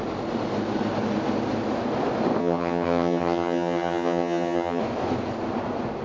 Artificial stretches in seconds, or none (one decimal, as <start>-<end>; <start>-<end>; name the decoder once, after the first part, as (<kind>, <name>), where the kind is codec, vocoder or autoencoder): 2.4-4.8 (vocoder, HiFi-GAN)